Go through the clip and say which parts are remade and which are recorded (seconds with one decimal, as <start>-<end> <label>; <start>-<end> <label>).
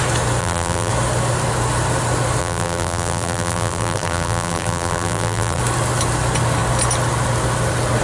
0.0-0.4 recorded; 0.4-0.9 remade; 0.9-2.4 recorded; 2.4-5.6 remade; 5.6-8.0 recorded